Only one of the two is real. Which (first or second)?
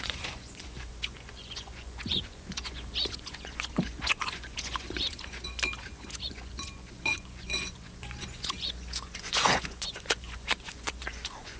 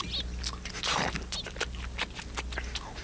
second